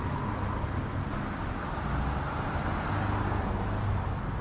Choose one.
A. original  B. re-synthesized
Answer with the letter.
A